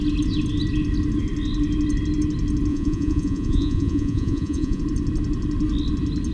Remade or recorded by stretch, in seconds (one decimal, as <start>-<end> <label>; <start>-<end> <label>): 0.0-2.7 recorded; 2.7-4.8 remade; 4.8-6.3 recorded